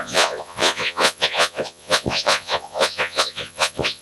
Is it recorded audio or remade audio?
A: remade